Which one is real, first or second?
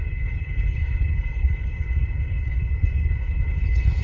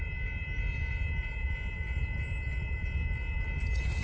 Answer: second